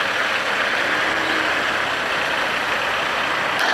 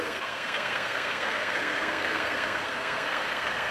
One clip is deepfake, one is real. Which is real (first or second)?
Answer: first